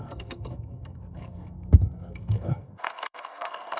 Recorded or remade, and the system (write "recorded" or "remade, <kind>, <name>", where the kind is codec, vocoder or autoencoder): remade, codec, SNAC